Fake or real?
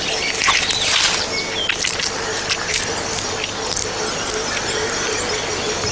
real